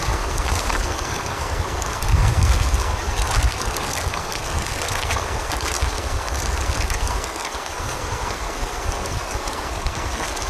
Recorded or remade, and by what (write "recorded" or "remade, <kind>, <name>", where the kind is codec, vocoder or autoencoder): remade, codec, SNAC